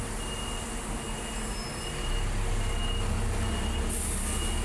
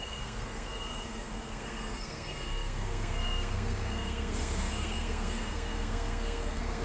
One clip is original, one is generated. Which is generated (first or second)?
second